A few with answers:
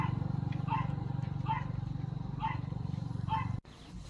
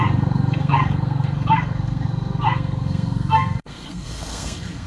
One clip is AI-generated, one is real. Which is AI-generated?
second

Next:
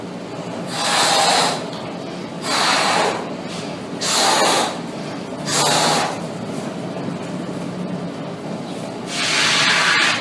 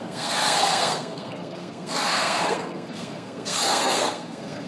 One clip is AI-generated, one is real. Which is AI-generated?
second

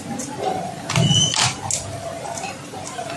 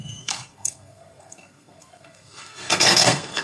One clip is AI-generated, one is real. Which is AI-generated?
second